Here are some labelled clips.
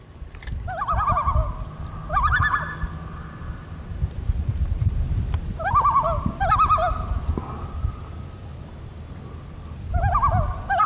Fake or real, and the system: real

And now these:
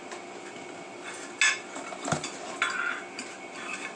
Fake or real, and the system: real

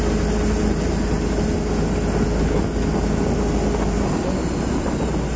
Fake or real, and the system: real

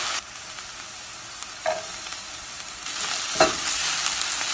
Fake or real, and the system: real